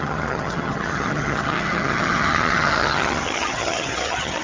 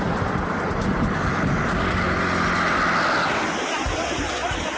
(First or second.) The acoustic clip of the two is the second